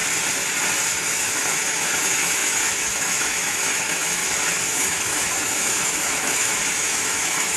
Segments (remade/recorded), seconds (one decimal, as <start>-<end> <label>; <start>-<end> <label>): 0.0-0.9 recorded; 0.9-4.2 remade; 4.2-4.7 recorded; 4.7-7.6 remade

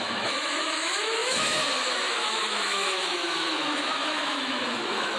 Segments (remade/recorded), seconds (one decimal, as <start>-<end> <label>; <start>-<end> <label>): 0.0-5.2 remade